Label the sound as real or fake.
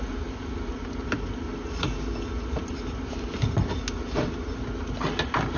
real